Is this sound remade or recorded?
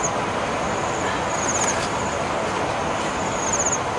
recorded